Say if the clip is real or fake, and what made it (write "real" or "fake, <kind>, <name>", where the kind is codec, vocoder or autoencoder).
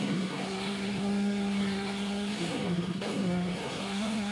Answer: fake, codec, SNAC